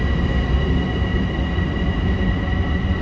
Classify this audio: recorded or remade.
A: recorded